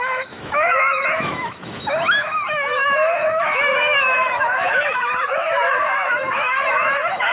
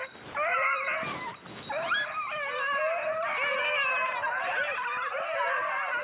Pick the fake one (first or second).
first